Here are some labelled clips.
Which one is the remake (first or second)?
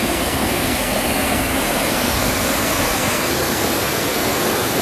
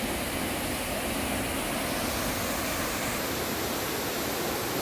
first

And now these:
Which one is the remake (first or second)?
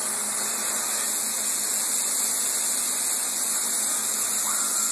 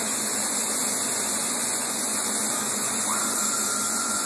second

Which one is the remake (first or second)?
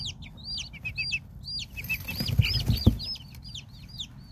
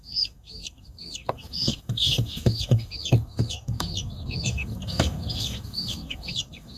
second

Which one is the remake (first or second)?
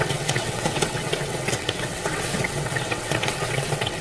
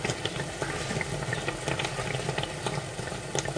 first